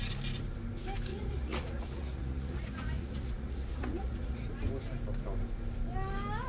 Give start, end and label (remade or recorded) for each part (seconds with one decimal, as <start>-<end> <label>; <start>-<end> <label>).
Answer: 0.0-1.1 recorded; 1.1-4.5 remade; 4.5-6.5 recorded